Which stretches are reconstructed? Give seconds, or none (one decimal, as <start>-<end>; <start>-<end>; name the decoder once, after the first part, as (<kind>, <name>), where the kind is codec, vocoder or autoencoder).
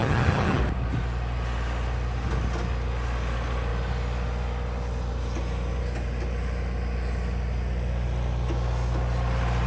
0.0-0.6 (vocoder, HiFi-GAN)